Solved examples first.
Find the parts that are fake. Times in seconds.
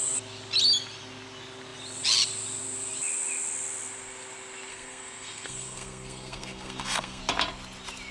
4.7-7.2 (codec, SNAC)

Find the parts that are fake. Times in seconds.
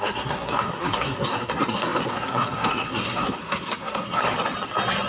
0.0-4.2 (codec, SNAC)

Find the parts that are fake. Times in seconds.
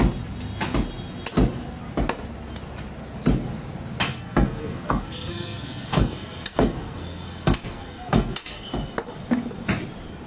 4.1-8.7 (codec, SNAC)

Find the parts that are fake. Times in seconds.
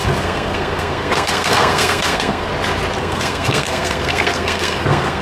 0.0-2.5 (codec, SNAC); 3.0-5.2